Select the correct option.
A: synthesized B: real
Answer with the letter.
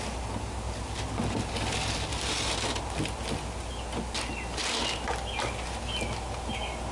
B